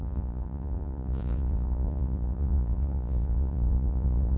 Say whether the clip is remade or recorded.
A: remade